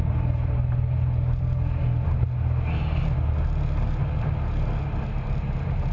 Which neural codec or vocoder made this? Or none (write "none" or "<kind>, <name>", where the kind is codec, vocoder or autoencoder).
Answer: none